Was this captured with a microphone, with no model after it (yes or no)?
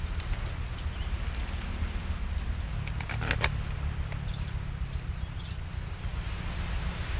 yes